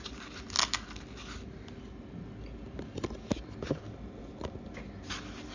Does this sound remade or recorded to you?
recorded